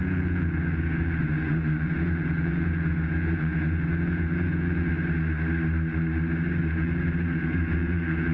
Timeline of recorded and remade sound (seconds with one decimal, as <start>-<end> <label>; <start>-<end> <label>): 0.0-4.9 remade; 4.9-6.6 recorded; 6.6-8.3 remade